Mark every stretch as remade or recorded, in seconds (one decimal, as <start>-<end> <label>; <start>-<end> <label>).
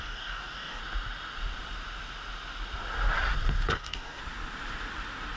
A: 0.0-0.8 remade; 0.8-3.7 recorded; 3.7-4.2 remade; 4.2-5.4 recorded